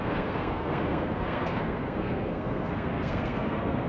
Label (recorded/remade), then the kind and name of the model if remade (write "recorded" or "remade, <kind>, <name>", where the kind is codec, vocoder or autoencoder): remade, codec, SNAC